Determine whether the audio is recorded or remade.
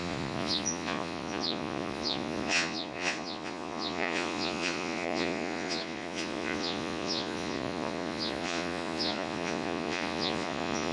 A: remade